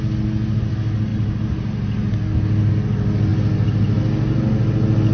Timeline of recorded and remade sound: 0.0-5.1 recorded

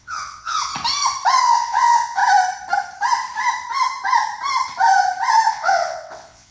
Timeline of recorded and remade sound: 0.0-0.7 remade; 0.7-1.4 recorded; 1.4-2.2 remade; 2.2-5.5 recorded; 5.5-6.5 remade

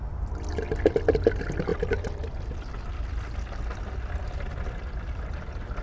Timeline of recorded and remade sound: 0.0-5.8 recorded

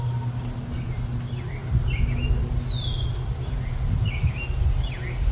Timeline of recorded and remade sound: 0.0-5.3 recorded

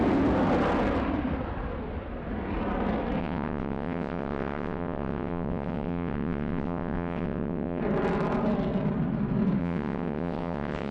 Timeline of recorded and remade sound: 0.0-3.2 recorded; 3.2-7.8 remade; 7.8-9.6 recorded; 9.6-10.9 remade

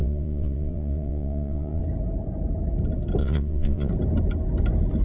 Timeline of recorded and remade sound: 0.0-1.8 remade; 1.8-3.2 recorded; 3.2-3.9 remade; 3.9-5.0 recorded

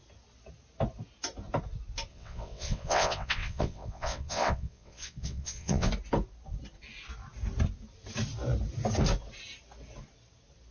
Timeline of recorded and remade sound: 0.0-2.1 recorded; 2.1-5.9 remade; 5.9-10.7 recorded